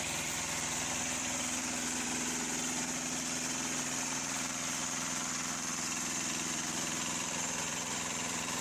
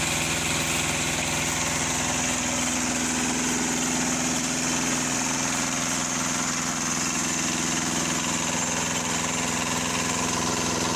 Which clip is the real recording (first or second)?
second